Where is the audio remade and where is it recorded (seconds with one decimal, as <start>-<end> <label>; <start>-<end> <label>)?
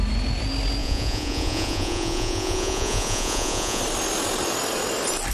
0.0-0.8 recorded; 0.8-3.8 remade; 3.8-5.3 recorded